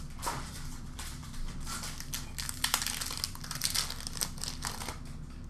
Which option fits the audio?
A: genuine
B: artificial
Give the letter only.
A